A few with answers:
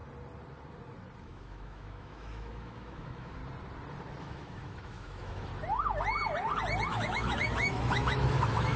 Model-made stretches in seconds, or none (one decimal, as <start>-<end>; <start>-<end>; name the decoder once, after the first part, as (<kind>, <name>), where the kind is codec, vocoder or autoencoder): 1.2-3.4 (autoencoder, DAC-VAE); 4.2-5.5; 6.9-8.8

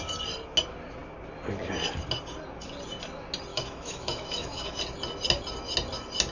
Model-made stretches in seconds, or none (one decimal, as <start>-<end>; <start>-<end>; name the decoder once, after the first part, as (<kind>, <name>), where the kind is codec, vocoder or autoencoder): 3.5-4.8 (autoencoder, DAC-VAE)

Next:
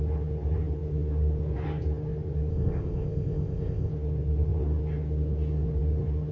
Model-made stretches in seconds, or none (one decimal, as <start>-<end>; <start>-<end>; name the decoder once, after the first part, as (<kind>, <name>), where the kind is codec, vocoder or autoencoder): 2.5-3.9 (codec, ZipCodec)

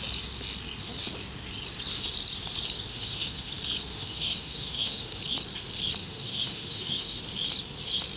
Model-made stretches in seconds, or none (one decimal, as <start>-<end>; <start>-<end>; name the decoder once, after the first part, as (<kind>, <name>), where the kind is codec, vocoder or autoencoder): 2.9-3.5 (autoencoder, DAC-VAE); 3.9-5.2; 6.0-7.2

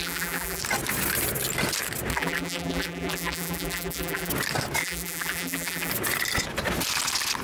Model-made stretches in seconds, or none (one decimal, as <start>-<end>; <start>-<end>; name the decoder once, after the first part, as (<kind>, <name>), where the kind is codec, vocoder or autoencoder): 0.0-0.6 (vocoder, BigVGAN v2); 2.1-4.3; 4.8-5.9

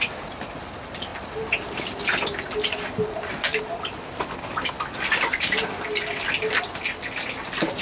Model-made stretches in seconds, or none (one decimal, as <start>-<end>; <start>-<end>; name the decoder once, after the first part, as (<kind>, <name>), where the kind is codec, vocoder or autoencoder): none

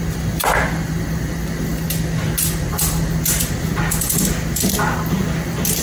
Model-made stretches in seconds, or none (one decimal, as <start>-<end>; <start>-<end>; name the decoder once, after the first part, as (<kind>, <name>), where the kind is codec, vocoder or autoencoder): none

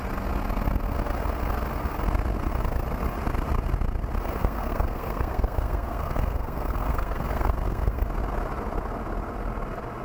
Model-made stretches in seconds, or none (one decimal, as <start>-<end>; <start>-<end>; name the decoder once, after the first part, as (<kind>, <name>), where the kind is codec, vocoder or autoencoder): 4.4-8.0 (codec, SNAC)